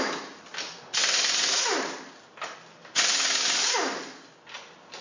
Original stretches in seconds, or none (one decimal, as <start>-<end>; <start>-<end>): 0.0-5.0

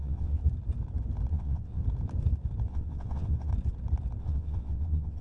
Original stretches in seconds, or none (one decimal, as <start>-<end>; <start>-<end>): 0.4-1.3; 1.8-2.7; 3.5-4.2